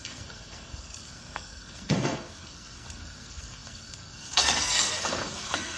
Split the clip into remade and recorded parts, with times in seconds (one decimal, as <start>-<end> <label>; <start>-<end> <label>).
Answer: 0.0-5.8 remade